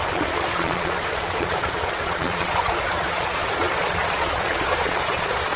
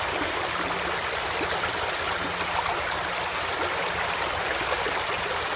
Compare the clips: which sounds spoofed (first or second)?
first